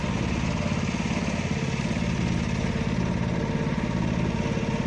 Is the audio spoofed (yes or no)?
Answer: no